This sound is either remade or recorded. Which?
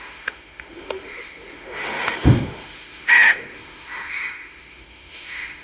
remade